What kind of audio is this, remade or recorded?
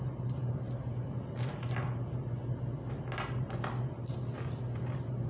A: recorded